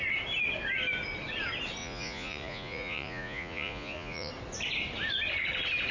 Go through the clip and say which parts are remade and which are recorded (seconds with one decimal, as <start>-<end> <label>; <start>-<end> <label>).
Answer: 0.0-1.8 recorded; 1.8-4.3 remade; 4.3-5.9 recorded